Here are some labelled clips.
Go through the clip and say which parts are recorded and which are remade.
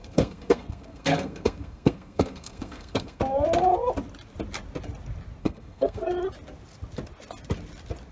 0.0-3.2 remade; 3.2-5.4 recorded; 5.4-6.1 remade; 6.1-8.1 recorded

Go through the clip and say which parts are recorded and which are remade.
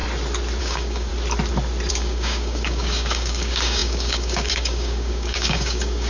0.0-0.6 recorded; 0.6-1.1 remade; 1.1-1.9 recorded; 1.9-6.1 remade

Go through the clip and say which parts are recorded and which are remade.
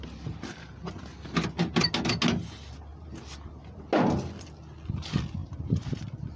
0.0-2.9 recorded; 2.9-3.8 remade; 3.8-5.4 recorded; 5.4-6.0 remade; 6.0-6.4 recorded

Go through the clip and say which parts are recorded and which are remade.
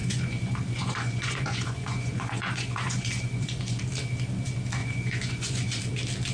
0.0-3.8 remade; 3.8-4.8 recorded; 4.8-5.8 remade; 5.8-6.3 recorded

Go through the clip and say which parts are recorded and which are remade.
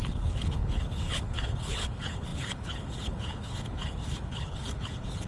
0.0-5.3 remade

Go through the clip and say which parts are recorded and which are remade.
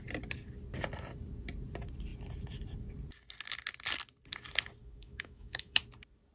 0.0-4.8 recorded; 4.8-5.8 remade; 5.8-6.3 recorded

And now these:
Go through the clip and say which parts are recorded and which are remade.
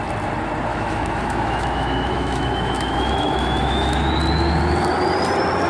0.0-0.7 recorded; 0.7-4.1 remade; 4.1-5.7 recorded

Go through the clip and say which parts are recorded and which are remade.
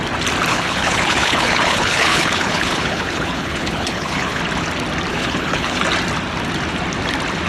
0.0-0.5 recorded; 0.5-4.4 remade; 4.4-5.1 recorded; 5.1-5.8 remade; 5.8-7.5 recorded